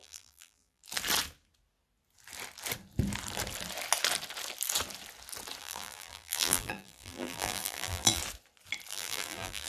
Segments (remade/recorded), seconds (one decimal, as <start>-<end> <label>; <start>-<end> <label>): 0.0-0.8 remade; 0.8-5.6 recorded; 5.6-8.2 remade; 8.2-8.9 recorded; 8.9-9.7 remade